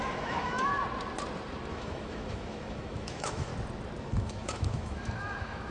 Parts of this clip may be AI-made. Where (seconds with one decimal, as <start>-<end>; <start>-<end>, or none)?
0.0-0.7; 1.7-3.5; 4.0-5.7